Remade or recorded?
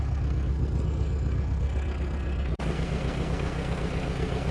remade